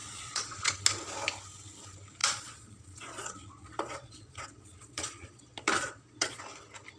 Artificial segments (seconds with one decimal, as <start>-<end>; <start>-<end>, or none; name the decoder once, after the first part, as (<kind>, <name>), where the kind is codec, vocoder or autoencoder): 0.0-0.7 (vocoder, Vocos); 2.2-6.4